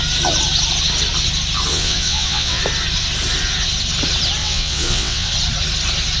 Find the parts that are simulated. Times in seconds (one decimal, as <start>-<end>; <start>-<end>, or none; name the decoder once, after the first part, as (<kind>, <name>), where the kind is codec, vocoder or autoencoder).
1.7-2.6 (vocoder, WaveNeXt); 4.4-5.3